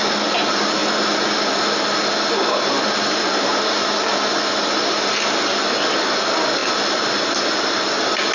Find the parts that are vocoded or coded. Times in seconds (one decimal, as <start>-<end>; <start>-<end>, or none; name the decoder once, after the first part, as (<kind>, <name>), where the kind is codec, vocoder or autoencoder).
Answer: none

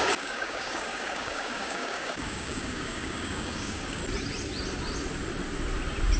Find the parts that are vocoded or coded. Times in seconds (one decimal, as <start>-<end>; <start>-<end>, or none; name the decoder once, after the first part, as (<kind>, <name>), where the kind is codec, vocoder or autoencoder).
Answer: 0.0-4.0 (codec, DAC)

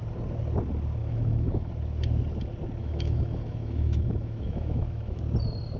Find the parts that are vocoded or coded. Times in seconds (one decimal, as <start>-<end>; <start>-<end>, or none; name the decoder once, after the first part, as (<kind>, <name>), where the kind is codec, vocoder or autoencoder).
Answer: 1.0-1.7 (autoencoder, DAC-VAE); 2.8-5.2